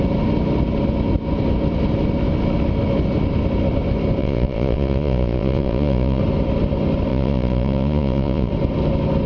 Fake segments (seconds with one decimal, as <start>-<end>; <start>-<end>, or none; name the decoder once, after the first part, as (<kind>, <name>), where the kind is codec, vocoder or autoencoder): 4.2-6.2 (vocoder, Vocos); 7.1-8.5